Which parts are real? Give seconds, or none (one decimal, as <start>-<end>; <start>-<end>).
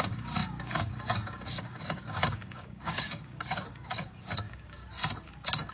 4.8-5.7